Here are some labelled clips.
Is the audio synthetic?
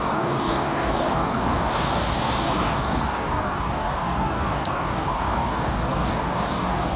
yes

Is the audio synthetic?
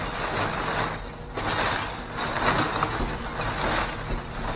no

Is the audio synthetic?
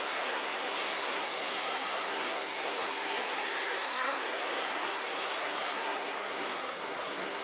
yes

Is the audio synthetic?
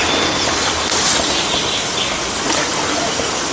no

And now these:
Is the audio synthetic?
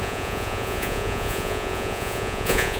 yes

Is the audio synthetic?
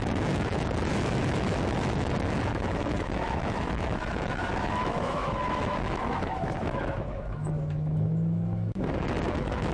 yes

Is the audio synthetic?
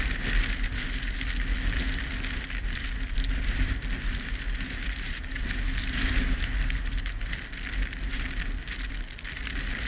no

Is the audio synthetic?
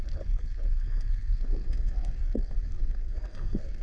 yes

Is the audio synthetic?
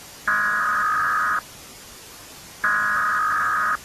no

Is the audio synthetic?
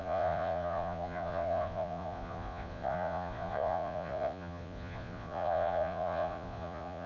yes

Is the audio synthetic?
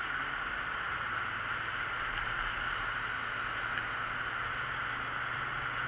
no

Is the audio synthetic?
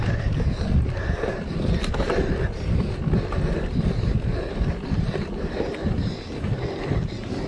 no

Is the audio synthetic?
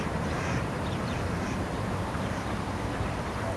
yes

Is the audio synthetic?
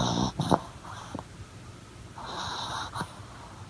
no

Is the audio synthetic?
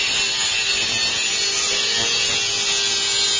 no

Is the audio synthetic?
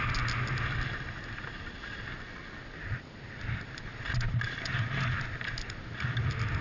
no